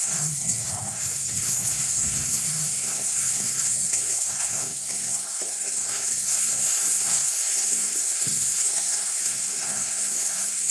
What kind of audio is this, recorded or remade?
remade